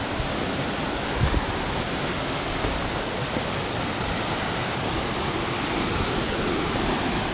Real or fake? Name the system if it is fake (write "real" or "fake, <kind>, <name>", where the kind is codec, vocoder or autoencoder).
real